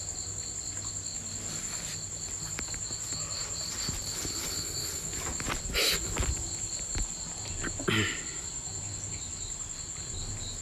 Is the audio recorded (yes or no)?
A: yes